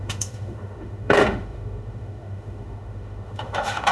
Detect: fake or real fake